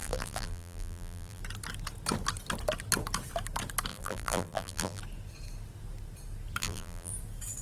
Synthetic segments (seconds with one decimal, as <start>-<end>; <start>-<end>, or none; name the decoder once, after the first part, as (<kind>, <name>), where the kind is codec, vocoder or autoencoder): 0.0-1.4 (vocoder, BigVGAN v2); 3.9-5.0; 6.6-7.1